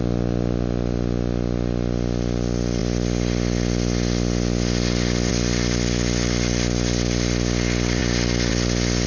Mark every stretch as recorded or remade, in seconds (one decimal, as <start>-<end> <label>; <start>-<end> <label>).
0.0-9.1 recorded